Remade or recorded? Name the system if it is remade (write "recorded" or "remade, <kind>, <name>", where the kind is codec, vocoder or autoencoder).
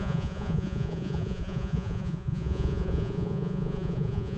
remade, vocoder, Vocos